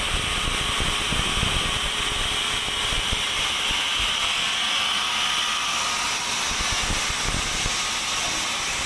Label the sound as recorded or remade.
recorded